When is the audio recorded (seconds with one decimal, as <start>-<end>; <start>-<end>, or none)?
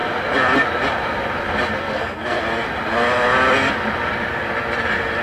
0.0-1.8; 2.4-5.2